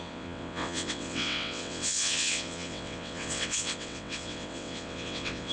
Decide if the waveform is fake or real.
fake